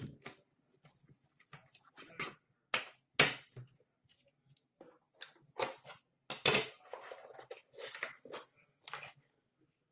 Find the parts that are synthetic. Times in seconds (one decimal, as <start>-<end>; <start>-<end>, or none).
none